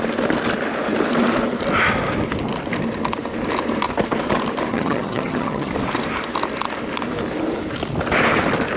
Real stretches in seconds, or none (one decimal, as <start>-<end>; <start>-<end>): 0.0-4.7; 5.7-8.8